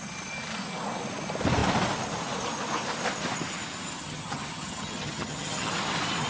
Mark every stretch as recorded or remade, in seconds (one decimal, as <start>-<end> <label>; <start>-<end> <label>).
0.0-4.0 recorded; 4.0-5.7 remade; 5.7-6.3 recorded